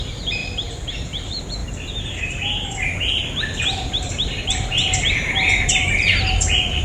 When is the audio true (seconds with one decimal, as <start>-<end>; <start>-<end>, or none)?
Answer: none